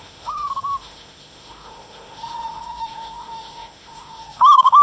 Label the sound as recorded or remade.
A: remade